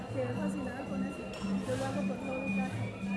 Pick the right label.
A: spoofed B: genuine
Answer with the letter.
B